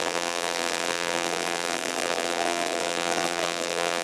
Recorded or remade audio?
remade